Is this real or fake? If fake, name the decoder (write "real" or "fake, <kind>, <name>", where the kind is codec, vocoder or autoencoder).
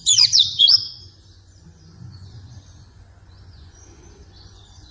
fake, vocoder, Vocos